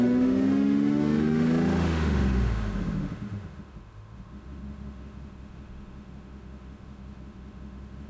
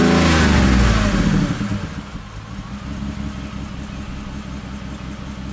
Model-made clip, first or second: first